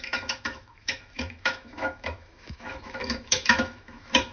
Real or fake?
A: fake